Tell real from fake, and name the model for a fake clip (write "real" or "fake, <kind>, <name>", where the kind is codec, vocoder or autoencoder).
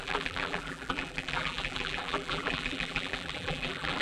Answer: fake, vocoder, BigVGAN v2